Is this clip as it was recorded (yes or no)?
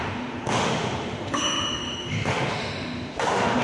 no